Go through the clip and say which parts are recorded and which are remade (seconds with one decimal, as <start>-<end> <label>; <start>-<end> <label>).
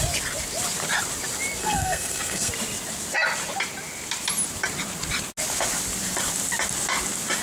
0.0-1.6 recorded; 1.6-2.5 remade; 2.5-7.4 recorded